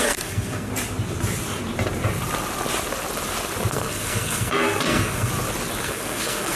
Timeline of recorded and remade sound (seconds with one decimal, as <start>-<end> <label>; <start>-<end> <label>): 0.0-0.7 remade; 0.7-3.7 recorded; 3.7-5.3 remade; 5.3-5.8 recorded; 5.8-6.6 remade